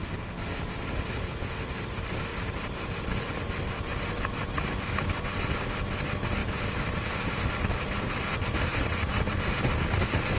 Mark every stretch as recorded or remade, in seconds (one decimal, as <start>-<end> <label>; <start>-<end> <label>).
0.0-2.3 recorded; 2.3-3.3 remade; 3.3-6.4 recorded; 6.4-8.2 remade; 8.2-10.4 recorded